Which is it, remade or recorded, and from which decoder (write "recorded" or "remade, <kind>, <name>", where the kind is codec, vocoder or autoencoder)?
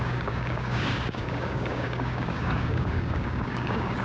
remade, codec, DAC